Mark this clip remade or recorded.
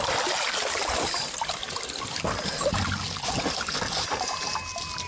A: recorded